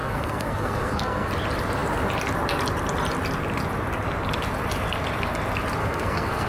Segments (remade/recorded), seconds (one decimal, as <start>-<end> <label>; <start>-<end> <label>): 0.0-1.3 remade; 1.3-5.8 recorded; 5.8-6.5 remade